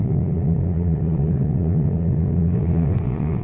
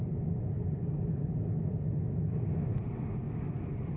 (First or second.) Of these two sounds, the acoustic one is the second